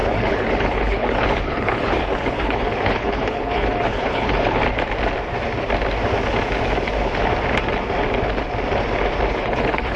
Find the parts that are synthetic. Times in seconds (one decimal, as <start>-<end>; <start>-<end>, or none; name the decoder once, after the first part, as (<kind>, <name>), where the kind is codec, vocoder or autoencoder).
0.0-4.6 (codec, HILCodec); 9.3-10.0